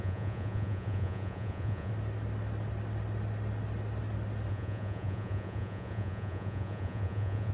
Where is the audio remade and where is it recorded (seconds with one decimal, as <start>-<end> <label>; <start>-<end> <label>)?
0.0-1.9 remade; 1.9-4.5 recorded; 4.5-7.5 remade